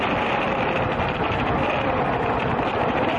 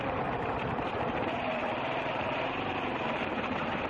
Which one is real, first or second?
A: first